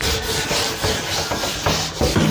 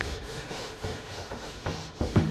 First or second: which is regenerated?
second